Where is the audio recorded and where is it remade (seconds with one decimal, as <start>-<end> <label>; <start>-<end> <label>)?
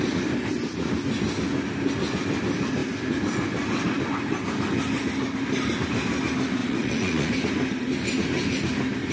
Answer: 0.0-6.6 recorded; 6.6-7.3 remade; 7.3-9.1 recorded